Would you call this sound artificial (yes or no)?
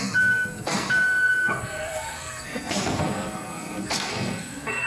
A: yes